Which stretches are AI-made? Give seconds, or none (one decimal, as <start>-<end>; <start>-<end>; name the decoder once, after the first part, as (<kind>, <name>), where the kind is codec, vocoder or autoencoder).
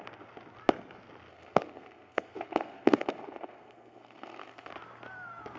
1.3-4.7 (codec, SNAC)